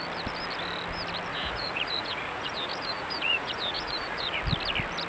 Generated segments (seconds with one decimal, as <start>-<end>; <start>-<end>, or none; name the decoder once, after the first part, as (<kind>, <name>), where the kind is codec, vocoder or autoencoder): 1.3-4.4 (vocoder, Vocos)